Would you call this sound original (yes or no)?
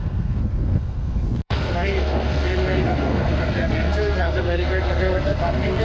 no